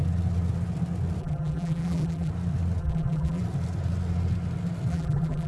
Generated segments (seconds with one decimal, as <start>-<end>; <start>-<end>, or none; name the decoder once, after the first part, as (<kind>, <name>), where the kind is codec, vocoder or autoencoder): 1.2-2.3 (vocoder, BigVGAN v2); 2.8-3.4; 4.9-5.5